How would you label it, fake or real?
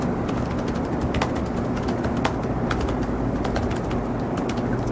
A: real